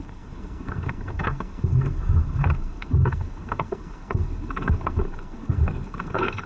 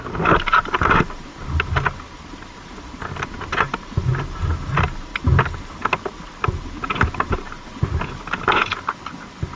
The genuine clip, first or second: second